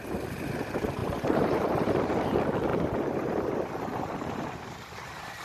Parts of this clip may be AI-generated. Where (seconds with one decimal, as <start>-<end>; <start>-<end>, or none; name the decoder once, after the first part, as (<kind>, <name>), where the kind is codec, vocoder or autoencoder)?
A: 1.0-2.1 (vocoder, BigVGAN v2); 2.7-3.4; 3.9-4.9